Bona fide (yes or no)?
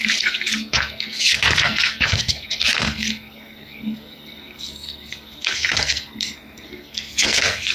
no